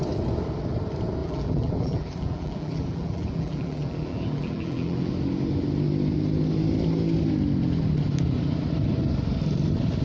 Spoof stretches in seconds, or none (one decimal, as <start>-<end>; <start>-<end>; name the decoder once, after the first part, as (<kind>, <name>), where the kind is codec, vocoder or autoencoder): 1.2-5.1 (vocoder, BigVGAN v2)

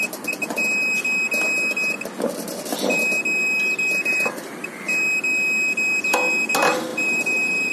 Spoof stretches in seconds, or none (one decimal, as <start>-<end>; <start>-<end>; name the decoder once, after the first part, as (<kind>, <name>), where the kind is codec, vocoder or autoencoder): 4.1-4.6 (vocoder, BigVGAN v2); 6.9-7.7